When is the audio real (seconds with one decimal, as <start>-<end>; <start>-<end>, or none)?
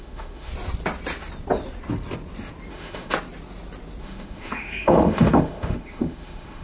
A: 0.5-2.7; 3.1-4.0